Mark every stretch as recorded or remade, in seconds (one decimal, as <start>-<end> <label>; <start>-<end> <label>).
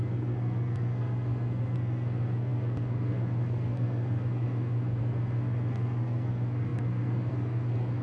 0.0-8.0 remade